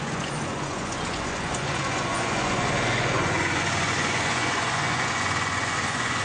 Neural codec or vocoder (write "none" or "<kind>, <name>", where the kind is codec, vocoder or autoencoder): vocoder, Vocos